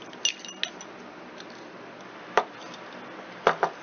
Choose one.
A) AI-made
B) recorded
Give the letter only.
B